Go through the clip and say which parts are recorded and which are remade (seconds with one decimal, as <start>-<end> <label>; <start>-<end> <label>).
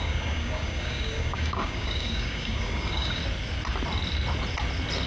0.0-3.2 remade; 3.2-5.1 recorded